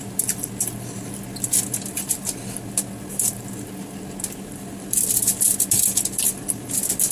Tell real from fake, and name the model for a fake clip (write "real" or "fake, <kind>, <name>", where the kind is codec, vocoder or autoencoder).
real